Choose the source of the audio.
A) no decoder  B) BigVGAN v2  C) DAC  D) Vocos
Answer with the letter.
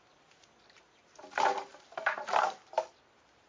A